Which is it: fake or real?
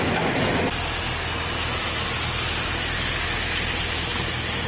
real